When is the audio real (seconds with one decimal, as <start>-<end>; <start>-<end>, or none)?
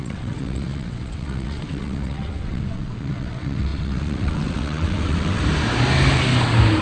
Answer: 5.4-6.8